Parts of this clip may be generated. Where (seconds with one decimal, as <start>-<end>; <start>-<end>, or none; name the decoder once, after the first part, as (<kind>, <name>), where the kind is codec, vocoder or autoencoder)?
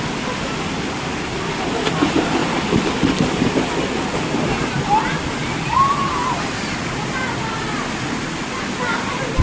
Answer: none